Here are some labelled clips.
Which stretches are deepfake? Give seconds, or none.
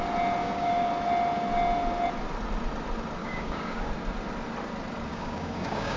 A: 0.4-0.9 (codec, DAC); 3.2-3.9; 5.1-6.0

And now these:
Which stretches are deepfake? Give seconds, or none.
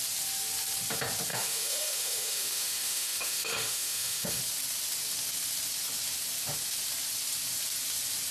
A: 1.3-4.4 (autoencoder, DAC-VAE)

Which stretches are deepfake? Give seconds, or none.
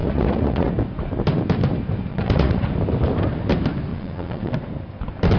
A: 0.0-0.7 (vocoder, Vocos); 2.1-2.7; 3.9-4.5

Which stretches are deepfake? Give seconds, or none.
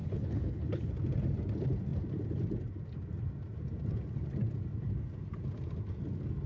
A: 0.0-0.9 (codec, HILCodec)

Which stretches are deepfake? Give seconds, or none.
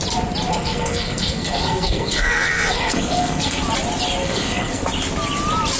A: 0.5-3.6 (codec, SNAC); 4.2-4.8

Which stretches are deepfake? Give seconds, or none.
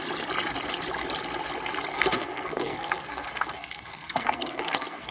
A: 1.9-5.1 (codec, SNAC)